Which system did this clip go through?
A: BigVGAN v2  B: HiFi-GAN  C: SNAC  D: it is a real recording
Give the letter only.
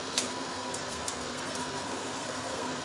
C